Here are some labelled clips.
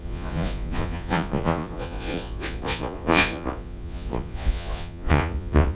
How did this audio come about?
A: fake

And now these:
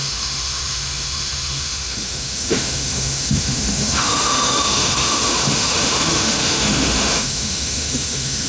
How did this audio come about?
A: fake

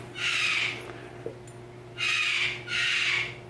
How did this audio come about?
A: real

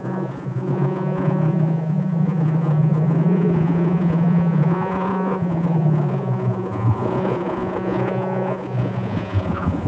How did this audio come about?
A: fake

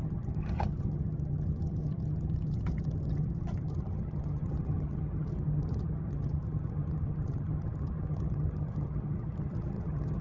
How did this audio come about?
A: fake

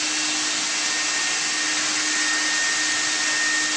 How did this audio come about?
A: real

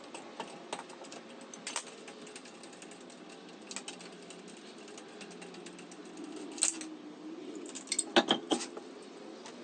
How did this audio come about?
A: real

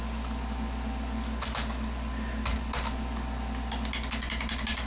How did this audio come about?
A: real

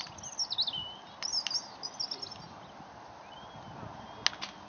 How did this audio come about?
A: real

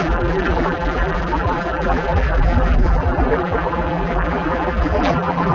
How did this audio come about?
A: fake